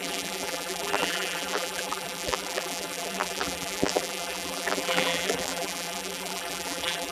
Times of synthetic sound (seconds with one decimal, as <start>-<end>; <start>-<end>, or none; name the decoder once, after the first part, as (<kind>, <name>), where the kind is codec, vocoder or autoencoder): 0.0-7.1 (vocoder, BigVGAN v2)